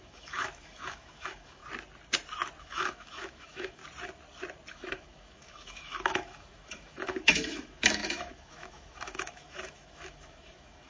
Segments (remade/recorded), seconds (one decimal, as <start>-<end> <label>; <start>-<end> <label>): 0.0-1.6 remade; 1.6-2.6 recorded; 2.6-3.8 remade; 3.8-4.7 recorded; 4.7-10.9 remade